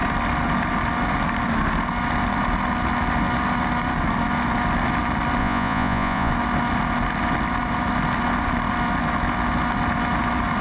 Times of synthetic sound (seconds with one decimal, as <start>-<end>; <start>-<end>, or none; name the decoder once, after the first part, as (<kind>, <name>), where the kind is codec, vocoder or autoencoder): 5.4-6.3 (vocoder, Vocos)